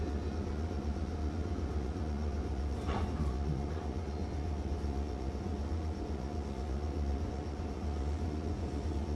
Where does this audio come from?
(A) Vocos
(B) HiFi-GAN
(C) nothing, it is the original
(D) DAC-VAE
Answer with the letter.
A